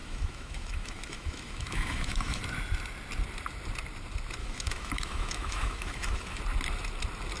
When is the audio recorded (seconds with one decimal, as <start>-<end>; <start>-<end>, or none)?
2.4-4.4; 6.4-7.4